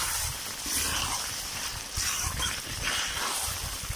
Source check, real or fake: real